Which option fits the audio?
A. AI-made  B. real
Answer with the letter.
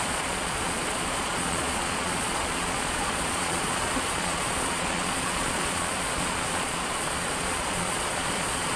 A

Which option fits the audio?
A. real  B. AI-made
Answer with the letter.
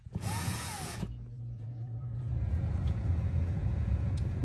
B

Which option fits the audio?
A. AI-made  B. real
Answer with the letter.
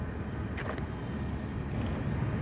B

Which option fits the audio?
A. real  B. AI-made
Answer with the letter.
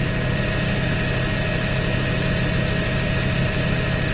A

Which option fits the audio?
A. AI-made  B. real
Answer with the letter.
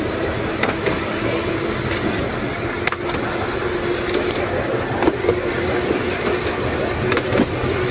B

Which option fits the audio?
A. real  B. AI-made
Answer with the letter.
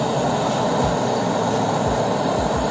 A